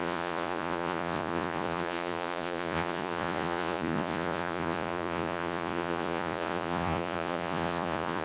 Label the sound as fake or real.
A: fake